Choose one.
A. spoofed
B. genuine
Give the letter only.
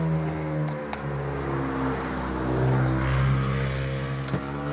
B